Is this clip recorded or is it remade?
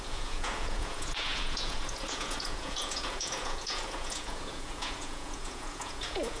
remade